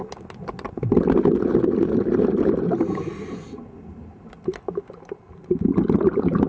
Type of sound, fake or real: real